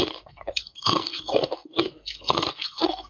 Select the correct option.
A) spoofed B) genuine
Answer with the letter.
A